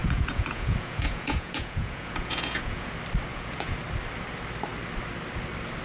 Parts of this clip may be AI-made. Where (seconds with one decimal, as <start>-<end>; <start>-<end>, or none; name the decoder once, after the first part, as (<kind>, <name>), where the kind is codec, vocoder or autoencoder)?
0.0-2.9 (vocoder, Vocos); 3.3-3.8